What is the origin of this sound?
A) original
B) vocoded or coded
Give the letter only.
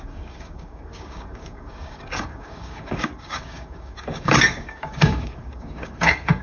B